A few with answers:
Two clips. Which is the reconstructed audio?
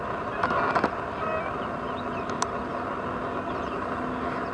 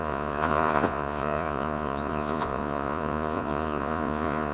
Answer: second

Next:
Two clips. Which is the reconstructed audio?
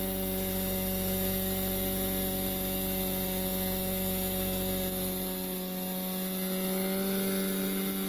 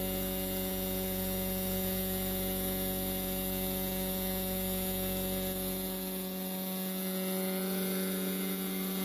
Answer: second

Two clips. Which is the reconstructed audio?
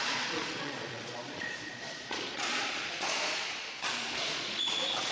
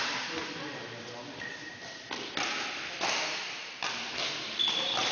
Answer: first